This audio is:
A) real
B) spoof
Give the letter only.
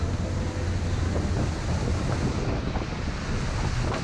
A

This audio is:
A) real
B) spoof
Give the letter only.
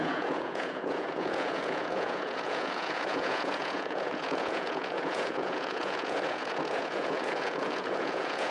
B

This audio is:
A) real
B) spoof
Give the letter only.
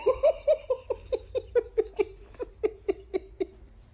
A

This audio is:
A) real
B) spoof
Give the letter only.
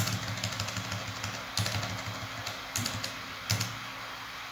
A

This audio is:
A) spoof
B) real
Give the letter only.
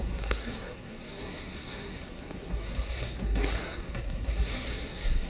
A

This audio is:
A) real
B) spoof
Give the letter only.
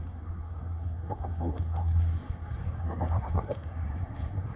B